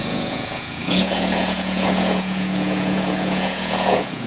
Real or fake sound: fake